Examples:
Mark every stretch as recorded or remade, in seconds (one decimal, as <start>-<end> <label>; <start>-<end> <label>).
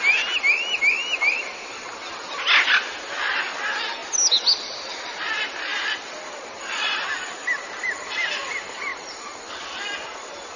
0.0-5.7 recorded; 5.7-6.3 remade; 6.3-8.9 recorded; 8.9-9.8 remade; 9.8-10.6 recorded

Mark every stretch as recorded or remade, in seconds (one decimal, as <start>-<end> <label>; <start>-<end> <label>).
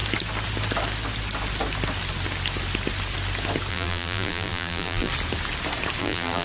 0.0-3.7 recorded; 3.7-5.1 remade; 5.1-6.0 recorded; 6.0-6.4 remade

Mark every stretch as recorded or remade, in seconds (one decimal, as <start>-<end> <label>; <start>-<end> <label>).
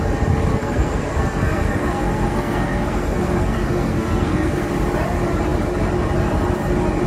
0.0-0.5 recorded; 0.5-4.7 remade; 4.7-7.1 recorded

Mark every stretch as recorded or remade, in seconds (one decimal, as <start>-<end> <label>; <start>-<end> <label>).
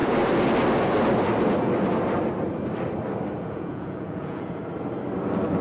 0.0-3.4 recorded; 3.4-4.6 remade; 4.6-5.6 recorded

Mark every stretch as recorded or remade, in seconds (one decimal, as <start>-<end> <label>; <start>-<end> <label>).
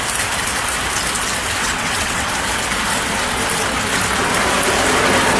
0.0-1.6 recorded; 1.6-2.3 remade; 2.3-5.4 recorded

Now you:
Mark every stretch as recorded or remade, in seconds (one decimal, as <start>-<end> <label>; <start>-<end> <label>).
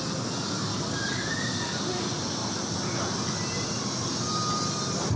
0.0-0.7 recorded; 0.7-1.4 remade; 1.4-2.4 recorded; 2.4-3.8 remade; 3.8-5.2 recorded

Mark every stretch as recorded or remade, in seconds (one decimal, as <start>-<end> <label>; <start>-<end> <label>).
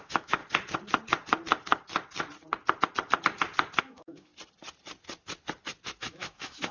0.0-0.4 remade; 0.4-3.8 recorded; 3.8-4.3 remade; 4.3-6.0 recorded; 6.0-6.7 remade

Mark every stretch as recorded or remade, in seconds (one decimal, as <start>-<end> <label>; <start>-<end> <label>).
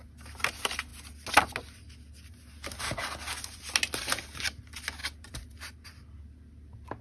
0.0-5.0 recorded; 5.0-5.9 remade; 5.9-7.0 recorded